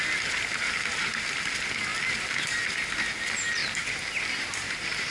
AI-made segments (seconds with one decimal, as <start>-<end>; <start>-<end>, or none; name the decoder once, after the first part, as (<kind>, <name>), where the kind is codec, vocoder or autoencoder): none